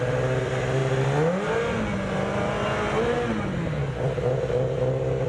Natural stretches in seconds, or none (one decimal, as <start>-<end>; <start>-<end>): 0.8-4.0